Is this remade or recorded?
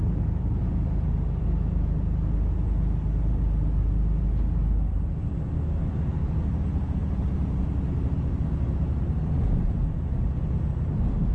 recorded